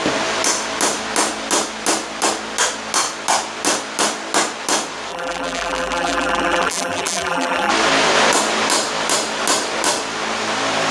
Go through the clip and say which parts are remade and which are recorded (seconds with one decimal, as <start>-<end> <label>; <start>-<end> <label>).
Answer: 0.0-5.1 recorded; 5.1-7.7 remade; 7.7-10.9 recorded